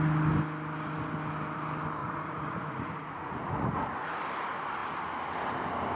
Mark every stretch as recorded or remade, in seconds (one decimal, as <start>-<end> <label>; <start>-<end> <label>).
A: 0.0-2.0 recorded; 2.0-4.2 remade; 4.2-6.0 recorded